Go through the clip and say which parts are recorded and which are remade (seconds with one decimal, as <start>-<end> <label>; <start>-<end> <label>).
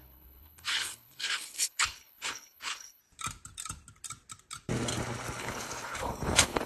0.0-3.0 remade; 3.0-5.4 recorded; 5.4-6.7 remade